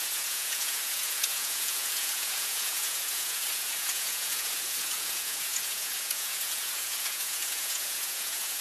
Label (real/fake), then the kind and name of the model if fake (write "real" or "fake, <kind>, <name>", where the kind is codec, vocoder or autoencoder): fake, vocoder, Vocos